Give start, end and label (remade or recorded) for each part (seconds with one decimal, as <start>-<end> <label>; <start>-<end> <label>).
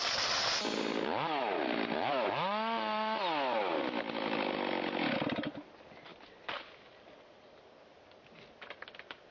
0.0-9.3 recorded